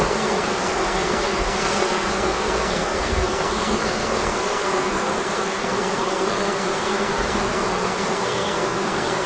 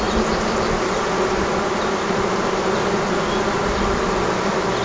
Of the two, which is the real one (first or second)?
second